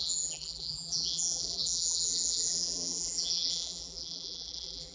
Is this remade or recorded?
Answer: remade